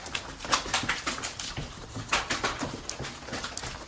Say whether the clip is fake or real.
real